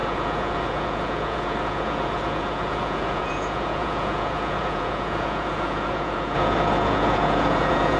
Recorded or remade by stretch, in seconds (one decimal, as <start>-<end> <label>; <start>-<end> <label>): 0.0-8.0 remade